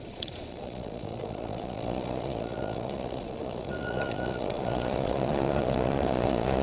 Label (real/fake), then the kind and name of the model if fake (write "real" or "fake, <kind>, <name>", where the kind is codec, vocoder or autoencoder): fake, vocoder, Vocos